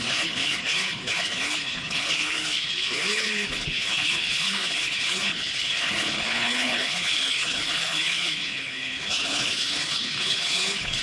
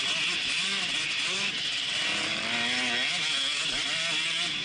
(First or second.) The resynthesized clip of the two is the first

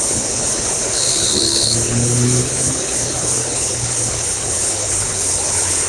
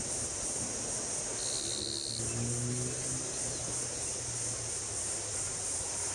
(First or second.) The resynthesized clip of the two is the first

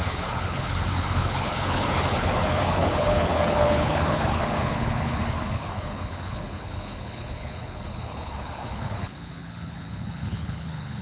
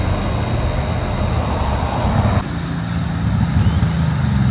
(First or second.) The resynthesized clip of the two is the first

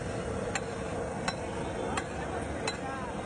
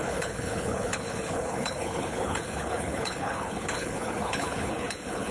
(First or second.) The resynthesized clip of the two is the second